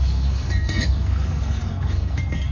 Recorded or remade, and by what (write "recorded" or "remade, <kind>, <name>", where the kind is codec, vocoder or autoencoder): remade, codec, SNAC